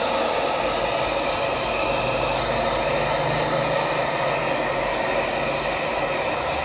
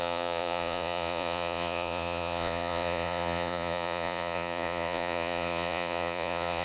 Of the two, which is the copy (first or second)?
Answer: second